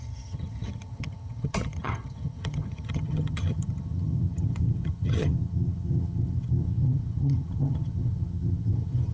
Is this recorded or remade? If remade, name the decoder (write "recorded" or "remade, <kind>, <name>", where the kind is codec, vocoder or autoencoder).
remade, vocoder, HiFi-GAN